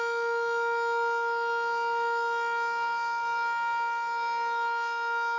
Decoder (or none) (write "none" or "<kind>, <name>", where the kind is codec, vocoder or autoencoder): none